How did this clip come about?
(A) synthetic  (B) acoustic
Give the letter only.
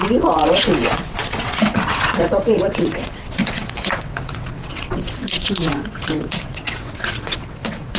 A